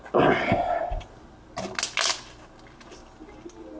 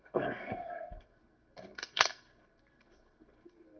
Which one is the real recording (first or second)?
first